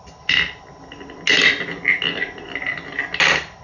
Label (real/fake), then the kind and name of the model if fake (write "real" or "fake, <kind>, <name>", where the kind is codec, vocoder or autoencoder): real